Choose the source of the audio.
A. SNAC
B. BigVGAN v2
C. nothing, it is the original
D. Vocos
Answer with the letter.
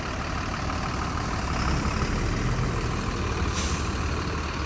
C